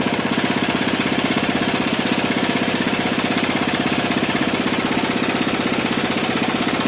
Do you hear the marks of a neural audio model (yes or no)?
yes